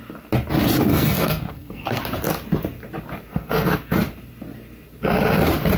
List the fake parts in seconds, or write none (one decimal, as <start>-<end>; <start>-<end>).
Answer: 0.9-2.0; 3.3-4.0